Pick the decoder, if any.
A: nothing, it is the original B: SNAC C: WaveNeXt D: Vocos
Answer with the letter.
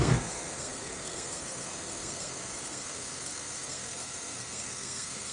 B